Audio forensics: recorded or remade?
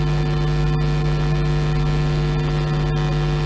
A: recorded